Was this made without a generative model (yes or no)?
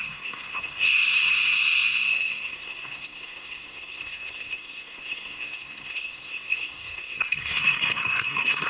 no